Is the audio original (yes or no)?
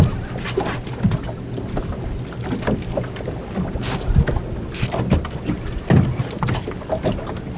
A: yes